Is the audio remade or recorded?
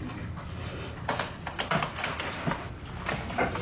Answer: recorded